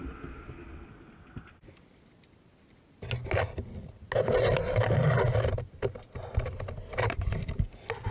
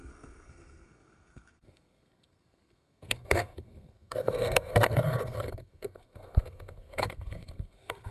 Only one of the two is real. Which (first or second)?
first